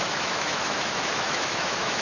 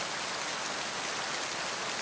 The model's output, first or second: first